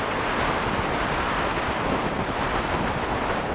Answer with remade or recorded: recorded